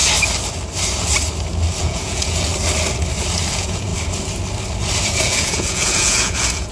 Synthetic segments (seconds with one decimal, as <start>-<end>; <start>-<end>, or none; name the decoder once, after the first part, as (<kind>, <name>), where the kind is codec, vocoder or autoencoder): 1.8-2.5 (vocoder, Vocos); 3.5-3.9; 5.2-6.7